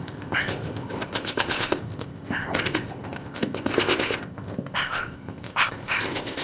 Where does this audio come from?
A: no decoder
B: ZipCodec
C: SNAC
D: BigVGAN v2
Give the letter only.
B